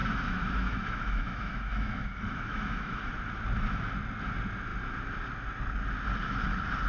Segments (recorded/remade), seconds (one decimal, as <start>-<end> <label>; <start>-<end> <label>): 0.0-3.1 remade; 3.1-6.9 recorded